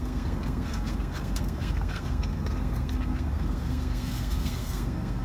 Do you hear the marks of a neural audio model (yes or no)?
yes